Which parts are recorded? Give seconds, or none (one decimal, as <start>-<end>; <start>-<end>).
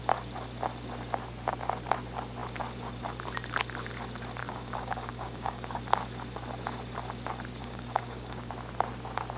0.0-4.4; 5.8-7.6; 8.5-9.4